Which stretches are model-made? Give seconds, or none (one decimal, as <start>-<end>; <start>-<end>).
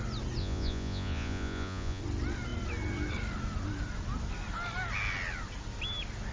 0.4-2.0